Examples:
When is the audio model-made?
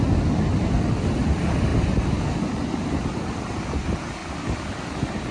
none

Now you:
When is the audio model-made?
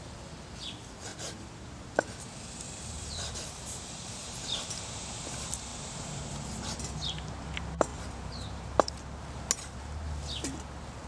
1.1-4.8; 5.7-6.2; 7.9-8.9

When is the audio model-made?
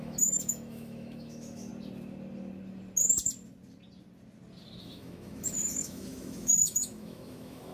0.0-1.7; 4.8-7.7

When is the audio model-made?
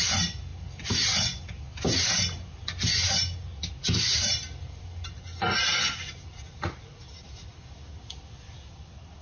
none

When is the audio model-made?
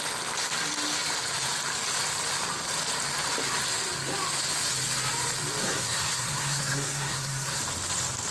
5.6-7.6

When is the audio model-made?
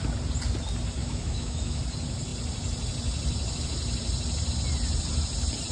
1.0-1.8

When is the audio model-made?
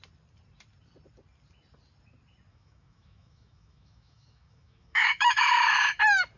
2.5-6.0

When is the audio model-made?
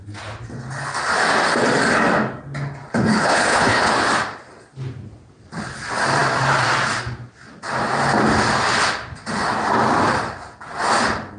3.1-3.9